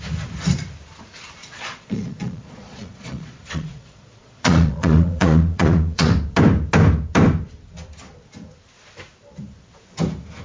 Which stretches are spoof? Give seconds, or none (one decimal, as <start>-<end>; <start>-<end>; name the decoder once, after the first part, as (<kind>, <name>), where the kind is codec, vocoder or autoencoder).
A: 1.4-6.1 (vocoder, Vocos)